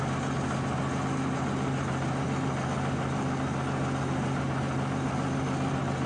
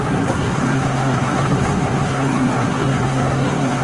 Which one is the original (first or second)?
first